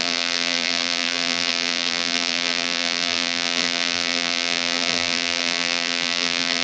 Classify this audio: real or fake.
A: fake